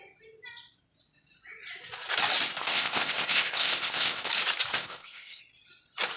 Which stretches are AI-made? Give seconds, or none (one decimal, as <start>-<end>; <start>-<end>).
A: 2.6-4.3; 4.7-5.4